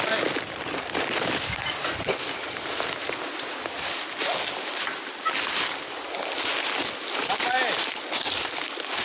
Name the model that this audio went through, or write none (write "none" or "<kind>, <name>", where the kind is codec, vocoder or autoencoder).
none